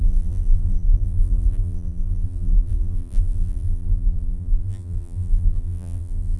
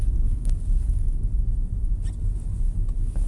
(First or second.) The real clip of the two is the second